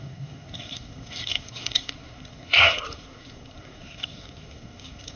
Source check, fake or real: fake